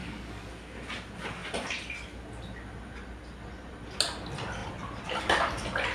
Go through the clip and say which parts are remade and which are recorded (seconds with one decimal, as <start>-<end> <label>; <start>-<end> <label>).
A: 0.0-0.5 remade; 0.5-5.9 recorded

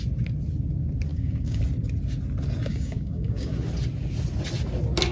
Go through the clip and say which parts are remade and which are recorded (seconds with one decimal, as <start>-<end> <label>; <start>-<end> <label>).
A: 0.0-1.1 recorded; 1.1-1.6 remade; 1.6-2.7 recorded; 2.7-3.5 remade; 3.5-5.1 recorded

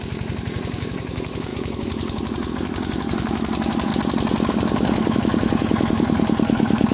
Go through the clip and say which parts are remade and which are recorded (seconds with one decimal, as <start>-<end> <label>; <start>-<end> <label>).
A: 0.0-3.9 remade; 3.9-4.5 recorded; 4.5-6.9 remade

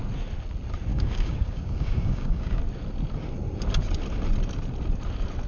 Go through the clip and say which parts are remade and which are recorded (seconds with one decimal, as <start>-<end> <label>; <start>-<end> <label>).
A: 0.0-0.9 recorded; 0.9-2.6 remade; 2.6-5.5 recorded

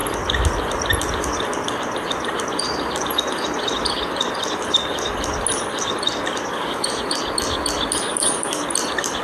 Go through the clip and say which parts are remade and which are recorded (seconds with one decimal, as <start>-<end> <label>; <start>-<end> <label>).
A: 0.0-6.5 recorded; 6.5-7.0 remade; 7.0-8.1 recorded; 8.1-8.6 remade; 8.6-9.2 recorded

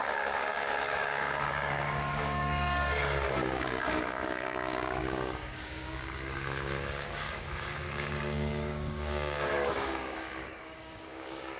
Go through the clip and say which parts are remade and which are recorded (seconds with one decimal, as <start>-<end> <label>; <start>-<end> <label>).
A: 0.0-11.6 remade